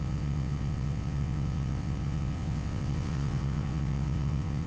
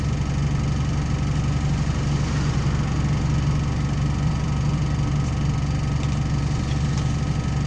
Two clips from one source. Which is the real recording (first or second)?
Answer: second